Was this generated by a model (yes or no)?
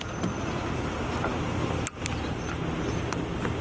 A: no